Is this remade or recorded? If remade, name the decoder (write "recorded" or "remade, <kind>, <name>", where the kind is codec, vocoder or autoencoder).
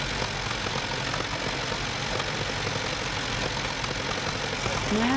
recorded